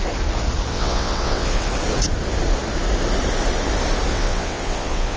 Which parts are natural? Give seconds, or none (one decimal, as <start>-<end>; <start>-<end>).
0.0-0.7; 1.7-4.1